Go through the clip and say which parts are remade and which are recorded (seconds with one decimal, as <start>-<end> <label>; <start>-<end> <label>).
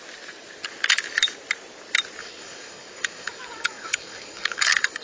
0.0-2.2 recorded; 2.2-5.0 remade